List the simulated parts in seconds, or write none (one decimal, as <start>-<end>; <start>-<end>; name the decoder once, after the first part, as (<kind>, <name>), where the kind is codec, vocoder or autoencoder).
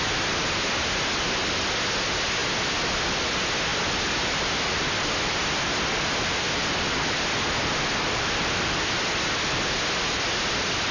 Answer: none